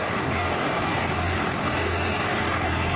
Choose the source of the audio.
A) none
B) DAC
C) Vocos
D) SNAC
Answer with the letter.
B